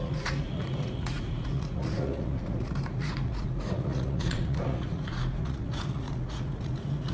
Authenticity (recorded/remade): remade